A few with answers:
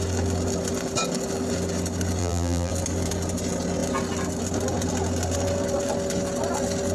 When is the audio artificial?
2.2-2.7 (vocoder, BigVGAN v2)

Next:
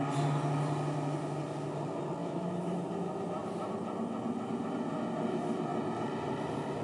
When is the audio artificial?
2.2-2.8 (autoencoder, DAC-VAE)

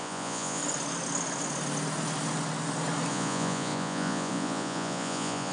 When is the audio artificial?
0.0-0.6 (vocoder, Vocos); 3.1-5.5

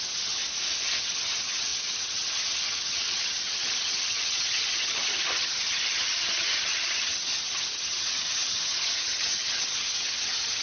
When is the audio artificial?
0.0-0.4 (vocoder, HiFi-GAN); 1.0-10.6

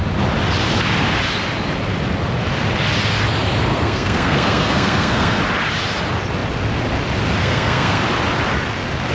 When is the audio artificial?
3.7-5.4 (codec, SNAC); 7.4-8.0

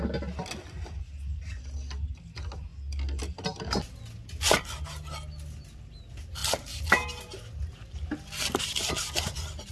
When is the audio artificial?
none

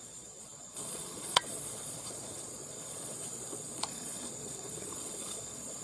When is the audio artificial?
0.0-5.8 (vocoder, Vocos)

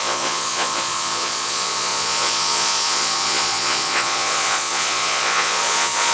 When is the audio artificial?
0.0-6.1 (vocoder, Vocos)